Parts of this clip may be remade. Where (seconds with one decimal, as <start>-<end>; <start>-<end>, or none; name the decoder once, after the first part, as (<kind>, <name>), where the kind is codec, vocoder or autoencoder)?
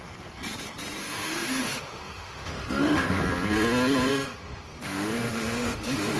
1.0-3.2 (autoencoder, DAC-VAE); 4.1-6.2